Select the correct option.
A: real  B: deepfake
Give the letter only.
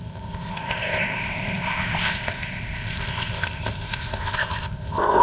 B